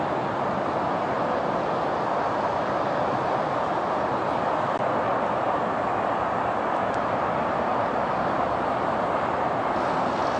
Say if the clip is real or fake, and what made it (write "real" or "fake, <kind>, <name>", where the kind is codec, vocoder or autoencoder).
real